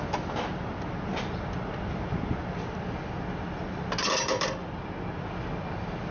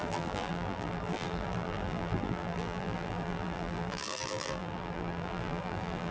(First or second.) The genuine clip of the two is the first